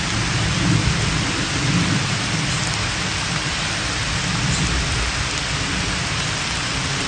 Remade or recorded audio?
recorded